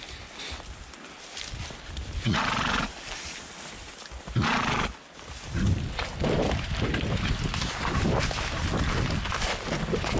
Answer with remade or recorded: recorded